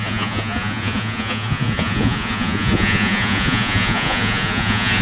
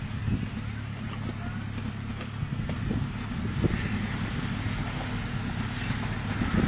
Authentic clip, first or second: second